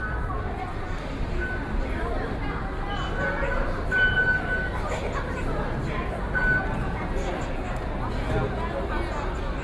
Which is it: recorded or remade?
recorded